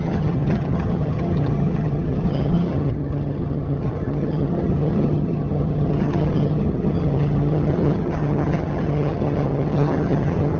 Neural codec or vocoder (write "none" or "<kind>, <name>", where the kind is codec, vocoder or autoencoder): vocoder, HiFi-GAN